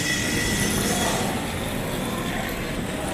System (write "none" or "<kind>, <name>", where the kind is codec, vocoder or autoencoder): none